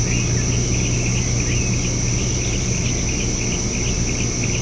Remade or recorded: recorded